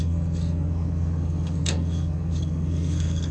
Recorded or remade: remade